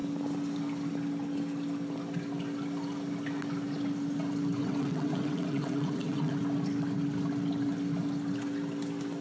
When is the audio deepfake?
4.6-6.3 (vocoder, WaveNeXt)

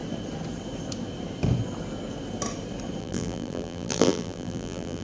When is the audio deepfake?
3.0-5.0 (vocoder, BigVGAN v2)

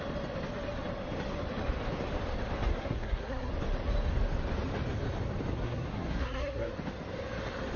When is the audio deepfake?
2.7-3.5 (codec, SNAC); 5.5-6.7

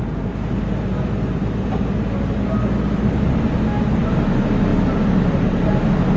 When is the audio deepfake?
none

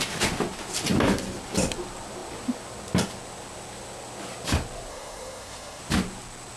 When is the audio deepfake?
4.9-5.8 (codec, SNAC)

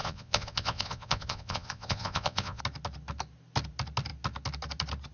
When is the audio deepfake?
0.0-2.6 (vocoder, Vocos)

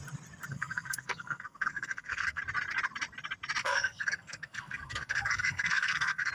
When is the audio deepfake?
0.5-2.4 (codec, SNAC); 3.6-6.3